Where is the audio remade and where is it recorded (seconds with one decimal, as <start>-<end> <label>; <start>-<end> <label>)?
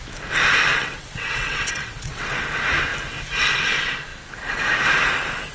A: 0.0-0.7 recorded; 0.7-2.4 remade; 2.4-5.5 recorded